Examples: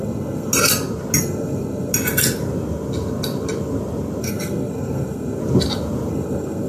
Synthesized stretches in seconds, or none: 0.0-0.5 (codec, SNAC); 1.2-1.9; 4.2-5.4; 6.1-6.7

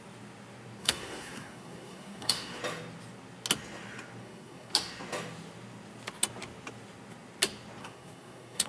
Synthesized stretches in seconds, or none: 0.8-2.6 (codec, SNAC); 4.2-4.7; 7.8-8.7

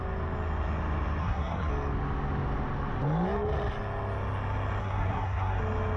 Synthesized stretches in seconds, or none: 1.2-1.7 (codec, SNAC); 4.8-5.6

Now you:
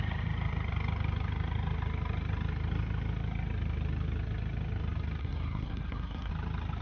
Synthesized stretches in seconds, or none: 5.2-6.3 (codec, SNAC)

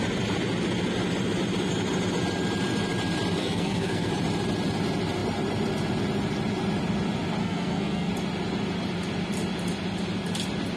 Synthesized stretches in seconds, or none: 3.4-4.1 (codec, SNAC); 7.4-8.1

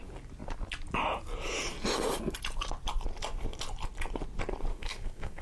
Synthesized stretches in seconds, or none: 4.7-5.4 (codec, SNAC)

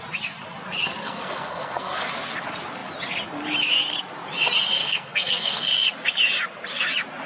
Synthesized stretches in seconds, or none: 1.0-2.1 (codec, SNAC); 4.8-5.6